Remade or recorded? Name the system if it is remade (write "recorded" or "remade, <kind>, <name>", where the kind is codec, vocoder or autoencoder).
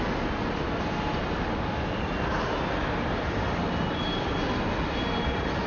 recorded